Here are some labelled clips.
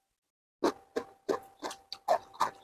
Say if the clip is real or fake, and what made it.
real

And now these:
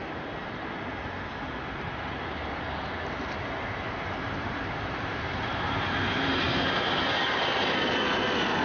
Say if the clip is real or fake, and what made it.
fake, vocoder, BigVGAN v2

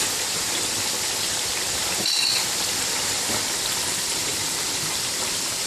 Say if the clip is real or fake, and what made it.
real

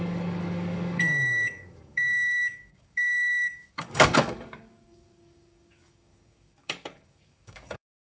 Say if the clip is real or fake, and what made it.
fake, codec, DAC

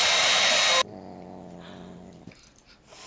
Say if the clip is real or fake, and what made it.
real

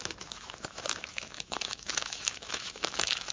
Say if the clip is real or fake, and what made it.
fake, autoencoder, DAC-VAE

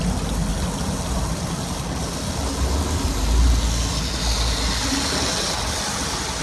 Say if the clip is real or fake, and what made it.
real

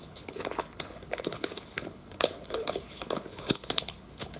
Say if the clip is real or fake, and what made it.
fake, codec, HILCodec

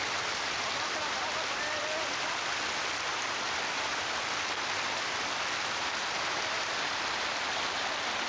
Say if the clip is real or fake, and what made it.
real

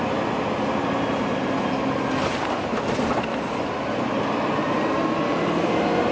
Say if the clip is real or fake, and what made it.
real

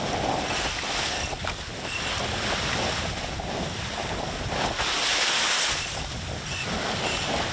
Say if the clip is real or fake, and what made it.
real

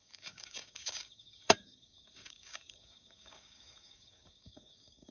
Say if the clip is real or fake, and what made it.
fake, codec, DAC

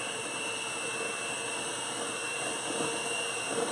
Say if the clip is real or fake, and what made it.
fake, vocoder, BigVGAN v2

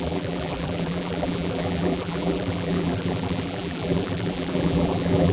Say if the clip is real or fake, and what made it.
fake, vocoder, BigVGAN v2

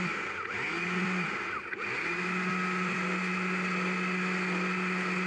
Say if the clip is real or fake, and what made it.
real